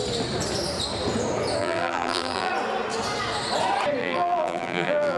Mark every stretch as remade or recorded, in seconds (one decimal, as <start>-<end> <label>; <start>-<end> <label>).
0.0-1.6 recorded; 1.6-2.5 remade; 2.5-4.0 recorded; 4.0-5.2 remade